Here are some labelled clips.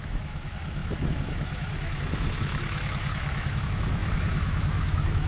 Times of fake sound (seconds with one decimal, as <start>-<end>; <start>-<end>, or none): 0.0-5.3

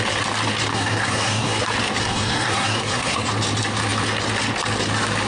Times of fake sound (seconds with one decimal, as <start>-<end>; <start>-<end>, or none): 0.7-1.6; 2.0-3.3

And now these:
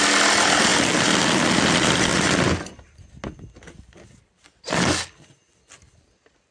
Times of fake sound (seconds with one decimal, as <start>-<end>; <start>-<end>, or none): none